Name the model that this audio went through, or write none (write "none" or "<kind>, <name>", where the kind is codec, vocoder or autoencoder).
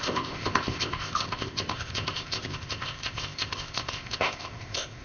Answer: codec, ZipCodec